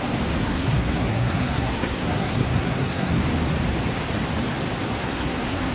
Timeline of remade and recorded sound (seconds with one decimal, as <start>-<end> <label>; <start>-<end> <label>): 0.0-0.4 recorded; 0.4-3.2 remade; 3.2-5.0 recorded; 5.0-5.7 remade